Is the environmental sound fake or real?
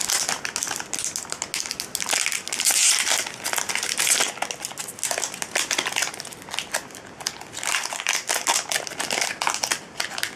real